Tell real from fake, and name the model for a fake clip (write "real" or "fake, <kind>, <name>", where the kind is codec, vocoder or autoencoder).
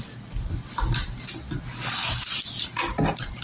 real